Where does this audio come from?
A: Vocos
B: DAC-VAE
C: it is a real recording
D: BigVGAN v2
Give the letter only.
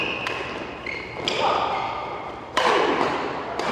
C